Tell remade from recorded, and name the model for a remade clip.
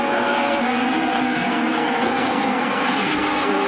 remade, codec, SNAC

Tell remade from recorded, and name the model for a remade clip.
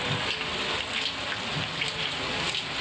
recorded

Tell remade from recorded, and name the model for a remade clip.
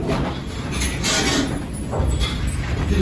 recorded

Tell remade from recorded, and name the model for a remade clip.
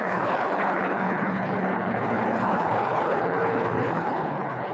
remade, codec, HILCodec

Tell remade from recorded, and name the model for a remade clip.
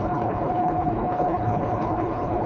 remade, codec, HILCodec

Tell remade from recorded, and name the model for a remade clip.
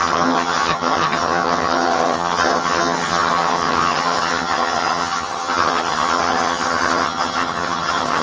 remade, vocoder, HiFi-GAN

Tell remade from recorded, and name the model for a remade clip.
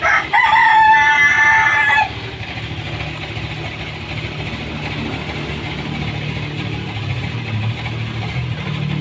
recorded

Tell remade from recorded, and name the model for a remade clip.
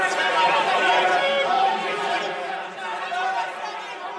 recorded